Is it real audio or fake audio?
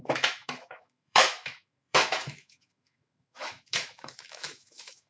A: fake